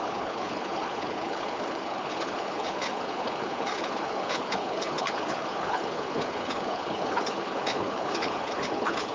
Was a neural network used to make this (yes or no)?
yes